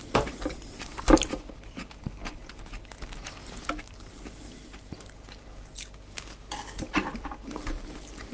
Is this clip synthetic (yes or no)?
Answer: no